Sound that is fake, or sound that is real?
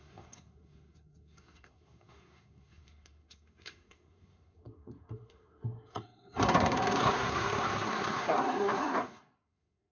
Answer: fake